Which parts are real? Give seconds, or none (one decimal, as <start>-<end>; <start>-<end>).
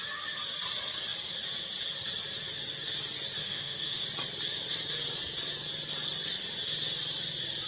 0.0-3.4; 4.0-7.7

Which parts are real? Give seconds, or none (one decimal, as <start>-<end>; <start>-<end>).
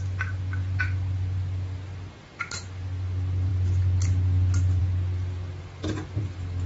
0.0-6.7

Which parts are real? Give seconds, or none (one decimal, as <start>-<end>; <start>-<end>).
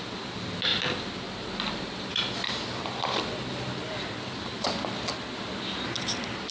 0.0-6.5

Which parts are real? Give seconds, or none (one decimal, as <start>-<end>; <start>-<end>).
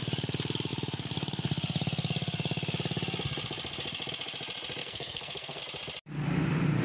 0.0-4.8; 5.6-6.8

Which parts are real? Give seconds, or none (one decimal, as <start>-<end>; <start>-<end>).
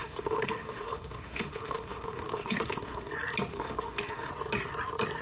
3.1-3.5; 4.3-5.2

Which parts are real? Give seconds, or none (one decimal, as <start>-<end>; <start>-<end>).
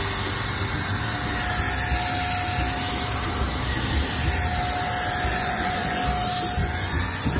0.0-5.3; 6.0-6.6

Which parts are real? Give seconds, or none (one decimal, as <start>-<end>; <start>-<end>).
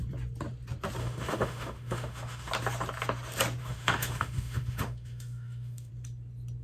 0.0-1.0; 2.5-3.6; 5.9-6.6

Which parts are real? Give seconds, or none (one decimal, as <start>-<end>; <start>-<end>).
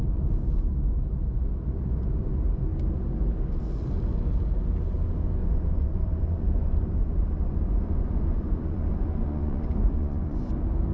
0.0-5.4; 10.5-10.9